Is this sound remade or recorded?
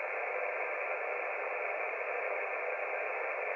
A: recorded